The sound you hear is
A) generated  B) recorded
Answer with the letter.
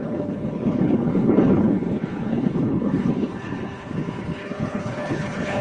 A